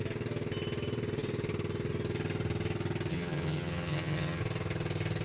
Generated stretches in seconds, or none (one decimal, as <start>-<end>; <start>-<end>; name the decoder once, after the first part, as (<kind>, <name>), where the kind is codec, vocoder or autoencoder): 3.1-4.4 (vocoder, HiFi-GAN)